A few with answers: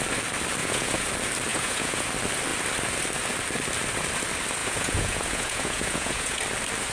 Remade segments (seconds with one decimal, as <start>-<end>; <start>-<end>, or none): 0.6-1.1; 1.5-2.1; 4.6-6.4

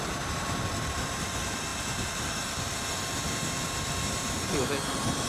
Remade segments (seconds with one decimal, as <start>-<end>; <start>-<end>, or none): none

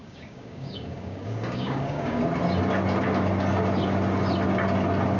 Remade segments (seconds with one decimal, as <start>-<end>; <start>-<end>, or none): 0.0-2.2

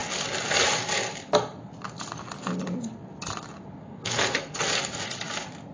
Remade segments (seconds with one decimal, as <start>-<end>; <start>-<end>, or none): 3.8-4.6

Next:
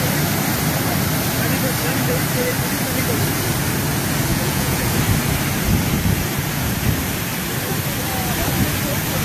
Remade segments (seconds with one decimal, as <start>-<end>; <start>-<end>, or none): 4.3-4.9

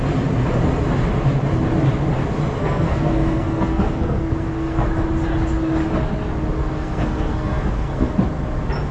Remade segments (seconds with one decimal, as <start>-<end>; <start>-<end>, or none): 2.6-4.9; 6.6-8.1

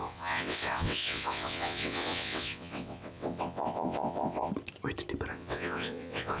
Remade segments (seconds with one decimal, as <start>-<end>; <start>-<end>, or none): 0.0-4.5; 5.3-6.4

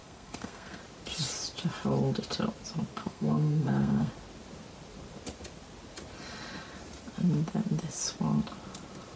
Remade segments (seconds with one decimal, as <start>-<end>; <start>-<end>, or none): 0.0-0.8; 2.9-4.1